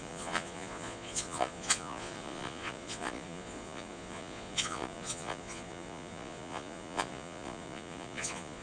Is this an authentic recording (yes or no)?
no